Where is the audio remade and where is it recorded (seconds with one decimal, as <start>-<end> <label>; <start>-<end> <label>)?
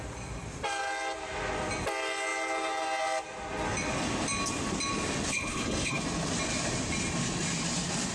0.0-5.3 recorded; 5.3-6.0 remade; 6.0-8.1 recorded